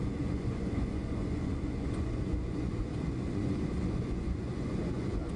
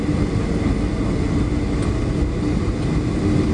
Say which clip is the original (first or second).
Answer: second